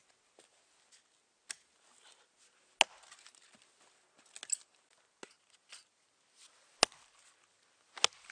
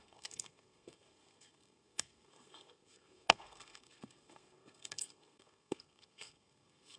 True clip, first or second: first